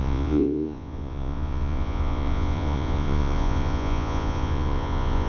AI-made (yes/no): yes